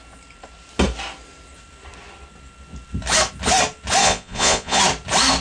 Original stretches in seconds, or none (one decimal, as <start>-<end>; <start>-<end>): 0.0-4.0; 4.8-5.4